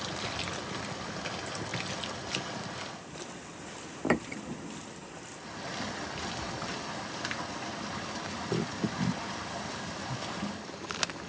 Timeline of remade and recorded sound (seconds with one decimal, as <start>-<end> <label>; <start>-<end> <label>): 0.0-11.3 recorded

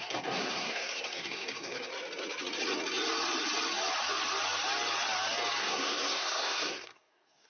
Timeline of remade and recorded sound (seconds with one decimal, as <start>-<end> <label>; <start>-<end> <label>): 0.0-1.9 remade; 1.9-5.6 recorded; 5.6-7.5 remade

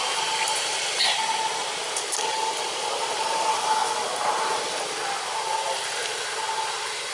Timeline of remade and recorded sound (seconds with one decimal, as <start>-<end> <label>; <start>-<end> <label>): 0.0-7.1 recorded

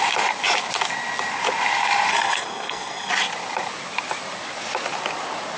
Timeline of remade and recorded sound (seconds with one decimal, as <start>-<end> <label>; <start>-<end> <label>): 0.0-2.1 recorded; 2.1-3.1 remade; 3.1-5.6 recorded

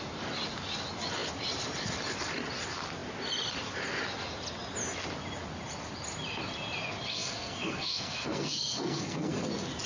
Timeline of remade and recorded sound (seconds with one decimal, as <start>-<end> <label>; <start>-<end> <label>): 0.0-7.1 recorded; 7.1-9.5 remade; 9.5-9.9 recorded

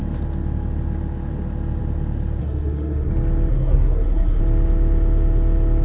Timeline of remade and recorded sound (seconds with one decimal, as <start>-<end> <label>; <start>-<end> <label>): 0.0-2.4 recorded; 2.4-3.1 remade; 3.1-3.5 recorded; 3.5-4.4 remade; 4.4-5.8 recorded